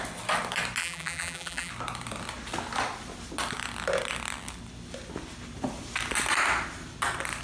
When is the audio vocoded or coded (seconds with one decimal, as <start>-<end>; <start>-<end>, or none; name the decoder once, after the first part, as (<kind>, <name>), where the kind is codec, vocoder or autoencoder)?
0.8-1.7 (vocoder, BigVGAN v2)